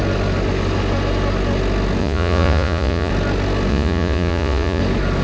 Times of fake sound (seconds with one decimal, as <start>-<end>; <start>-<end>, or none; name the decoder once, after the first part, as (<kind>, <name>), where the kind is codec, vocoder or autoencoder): 2.0-3.1 (vocoder, Vocos); 3.7-4.8